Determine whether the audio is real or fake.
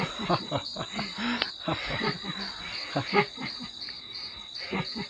real